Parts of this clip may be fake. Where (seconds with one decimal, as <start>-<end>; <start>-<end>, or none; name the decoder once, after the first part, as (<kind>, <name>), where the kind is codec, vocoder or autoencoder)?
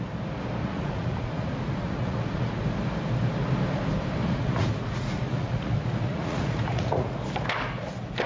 0.6-2.6 (vocoder, Vocos); 4.2-7.2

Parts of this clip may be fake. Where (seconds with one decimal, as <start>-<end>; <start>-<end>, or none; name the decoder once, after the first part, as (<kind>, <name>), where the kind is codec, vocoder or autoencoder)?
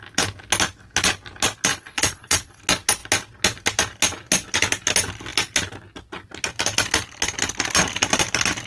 1.7-2.6 (vocoder, Vocos)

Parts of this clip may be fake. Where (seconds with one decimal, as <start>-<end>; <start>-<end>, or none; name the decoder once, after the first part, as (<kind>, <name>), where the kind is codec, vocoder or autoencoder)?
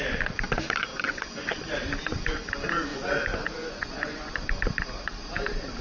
0.9-1.6 (vocoder, Vocos); 2.9-4.3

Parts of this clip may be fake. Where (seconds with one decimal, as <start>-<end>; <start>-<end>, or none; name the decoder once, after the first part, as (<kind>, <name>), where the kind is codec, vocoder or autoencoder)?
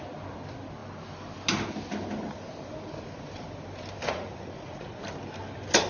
4.0-5.0 (vocoder, Vocos)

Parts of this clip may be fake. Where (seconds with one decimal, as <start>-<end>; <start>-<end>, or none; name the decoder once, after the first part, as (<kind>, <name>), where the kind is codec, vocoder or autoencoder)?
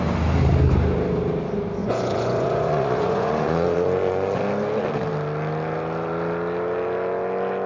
1.8-4.4 (vocoder, Vocos)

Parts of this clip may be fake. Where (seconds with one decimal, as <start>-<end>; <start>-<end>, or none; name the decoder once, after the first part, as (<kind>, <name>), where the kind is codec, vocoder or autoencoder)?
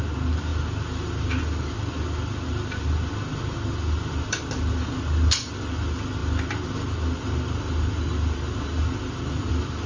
none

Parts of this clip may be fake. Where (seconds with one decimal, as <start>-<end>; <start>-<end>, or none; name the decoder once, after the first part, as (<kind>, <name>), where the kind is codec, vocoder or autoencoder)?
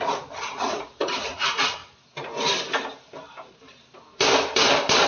0.0-1.8 (vocoder, Vocos)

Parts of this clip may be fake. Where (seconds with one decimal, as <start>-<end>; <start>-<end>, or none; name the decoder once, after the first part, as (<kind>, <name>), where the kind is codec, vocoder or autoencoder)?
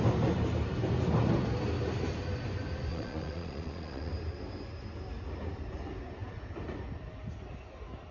2.9-4.1 (vocoder, Vocos)